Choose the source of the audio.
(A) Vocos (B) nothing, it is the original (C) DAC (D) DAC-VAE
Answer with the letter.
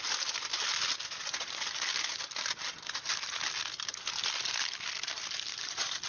B